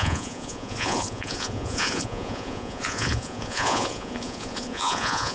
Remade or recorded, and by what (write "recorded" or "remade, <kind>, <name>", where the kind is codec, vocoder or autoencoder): remade, vocoder, Vocos